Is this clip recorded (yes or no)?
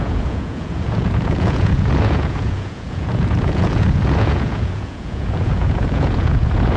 no